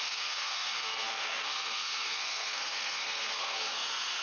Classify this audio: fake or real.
fake